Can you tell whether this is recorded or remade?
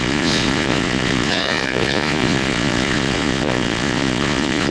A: remade